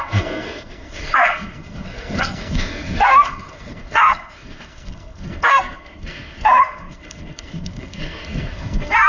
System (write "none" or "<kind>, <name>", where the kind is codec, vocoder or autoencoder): codec, SNAC